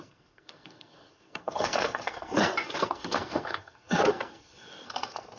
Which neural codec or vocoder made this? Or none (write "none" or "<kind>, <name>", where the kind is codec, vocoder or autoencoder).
codec, SNAC